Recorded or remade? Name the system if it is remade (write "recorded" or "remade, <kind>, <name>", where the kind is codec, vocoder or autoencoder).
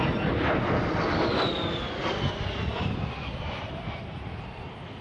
recorded